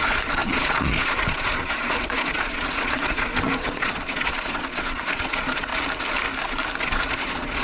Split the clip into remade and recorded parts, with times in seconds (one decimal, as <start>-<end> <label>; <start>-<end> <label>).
0.0-5.7 remade; 5.7-6.8 recorded; 6.8-7.6 remade